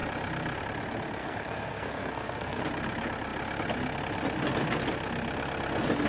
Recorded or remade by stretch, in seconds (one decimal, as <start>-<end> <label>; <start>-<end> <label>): 0.0-1.2 recorded; 1.2-2.6 remade; 2.6-6.1 recorded